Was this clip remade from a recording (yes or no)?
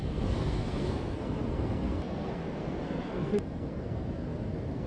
yes